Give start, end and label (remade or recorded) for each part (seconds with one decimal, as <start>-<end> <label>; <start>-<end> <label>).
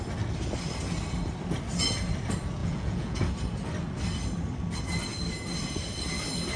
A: 0.0-2.6 recorded; 2.6-3.2 remade; 3.2-6.6 recorded